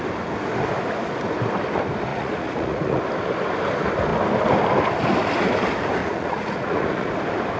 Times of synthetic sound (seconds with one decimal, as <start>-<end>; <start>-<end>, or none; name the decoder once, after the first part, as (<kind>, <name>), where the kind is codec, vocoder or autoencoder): 2.1-3.0 (vocoder, Vocos); 6.0-7.1